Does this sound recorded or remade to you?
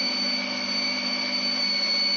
recorded